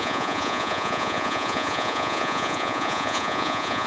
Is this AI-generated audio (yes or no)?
yes